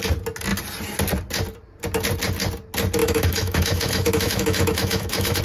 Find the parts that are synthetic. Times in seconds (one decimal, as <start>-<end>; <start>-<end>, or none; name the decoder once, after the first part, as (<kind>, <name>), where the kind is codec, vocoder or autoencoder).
3.0-5.4 (autoencoder, DAC-VAE)